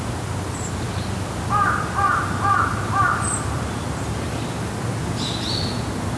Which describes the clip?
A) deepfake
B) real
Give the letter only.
B